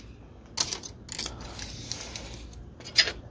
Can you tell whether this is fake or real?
real